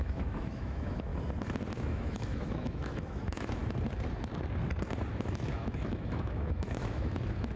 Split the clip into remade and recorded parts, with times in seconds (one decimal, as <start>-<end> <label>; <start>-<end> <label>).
0.0-1.1 remade; 1.1-1.7 recorded; 1.7-3.6 remade; 3.6-5.1 recorded; 5.1-7.6 remade